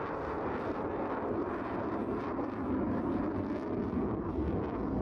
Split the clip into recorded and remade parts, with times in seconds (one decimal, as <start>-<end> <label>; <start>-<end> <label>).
0.0-5.0 recorded